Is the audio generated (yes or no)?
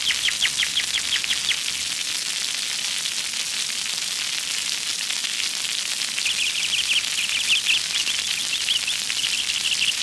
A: no